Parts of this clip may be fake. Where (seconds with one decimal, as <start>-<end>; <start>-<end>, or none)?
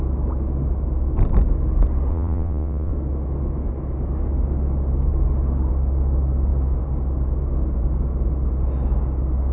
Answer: 2.1-2.9